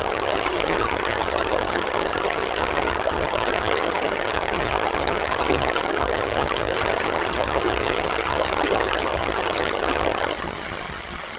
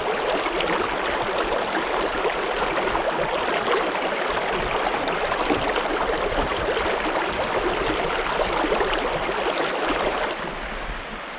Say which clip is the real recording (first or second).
second